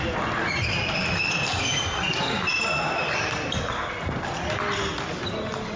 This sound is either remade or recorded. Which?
recorded